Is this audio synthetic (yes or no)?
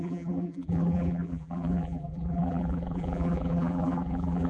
yes